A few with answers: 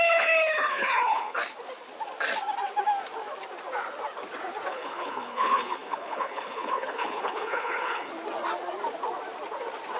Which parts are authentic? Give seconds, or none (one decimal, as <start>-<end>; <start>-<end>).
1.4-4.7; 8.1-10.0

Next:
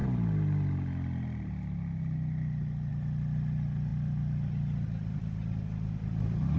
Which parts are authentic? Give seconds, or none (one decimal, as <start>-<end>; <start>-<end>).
0.0-6.6

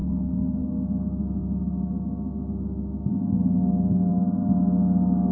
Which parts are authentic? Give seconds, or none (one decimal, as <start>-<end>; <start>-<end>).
0.7-5.3

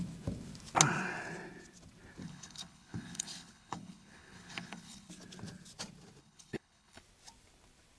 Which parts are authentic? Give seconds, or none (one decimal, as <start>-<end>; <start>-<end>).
0.0-2.2; 5.1-6.2; 7.0-8.0

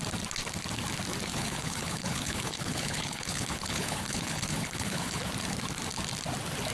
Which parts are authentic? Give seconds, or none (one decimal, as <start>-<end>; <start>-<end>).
0.0-1.3; 5.2-6.7